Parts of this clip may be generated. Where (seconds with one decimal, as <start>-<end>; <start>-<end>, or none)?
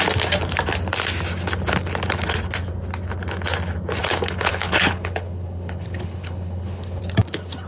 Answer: 4.0-7.0